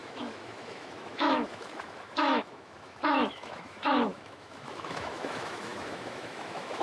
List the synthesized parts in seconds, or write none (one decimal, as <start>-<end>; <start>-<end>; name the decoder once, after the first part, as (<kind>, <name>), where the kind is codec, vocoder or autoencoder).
0.0-6.8 (autoencoder, DAC-VAE)